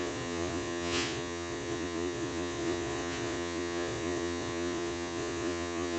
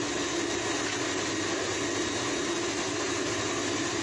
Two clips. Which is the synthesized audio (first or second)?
first